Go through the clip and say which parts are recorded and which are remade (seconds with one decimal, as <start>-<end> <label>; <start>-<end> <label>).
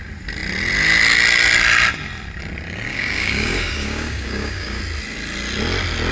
0.0-2.9 recorded; 2.9-4.8 remade; 4.8-6.1 recorded